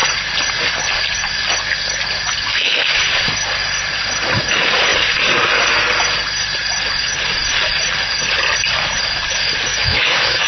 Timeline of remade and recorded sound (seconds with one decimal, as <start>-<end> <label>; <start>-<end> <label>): 0.0-2.5 recorded; 2.5-3.0 remade; 3.0-9.7 recorded; 9.7-10.5 remade